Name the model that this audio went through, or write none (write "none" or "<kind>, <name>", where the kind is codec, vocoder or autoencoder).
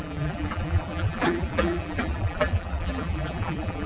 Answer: vocoder, BigVGAN v2